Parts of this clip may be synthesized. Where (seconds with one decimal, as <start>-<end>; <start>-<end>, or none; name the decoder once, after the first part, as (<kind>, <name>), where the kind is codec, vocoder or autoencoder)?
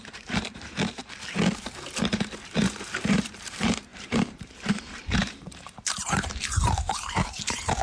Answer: 0.0-1.0 (vocoder, BigVGAN v2); 1.6-7.8